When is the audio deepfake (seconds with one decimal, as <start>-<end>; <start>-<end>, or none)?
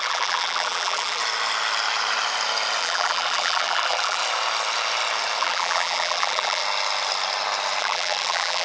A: 0.0-1.2; 2.8-4.2; 5.4-6.6; 7.8-8.6